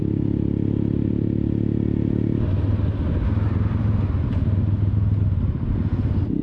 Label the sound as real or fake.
real